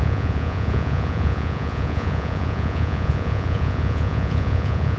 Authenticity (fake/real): fake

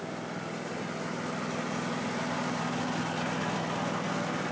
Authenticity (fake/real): real